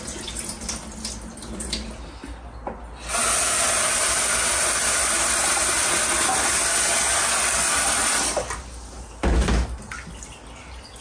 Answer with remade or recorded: recorded